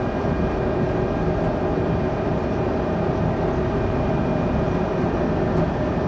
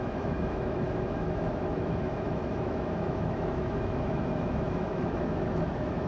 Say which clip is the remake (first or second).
second